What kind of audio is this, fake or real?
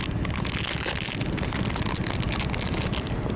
real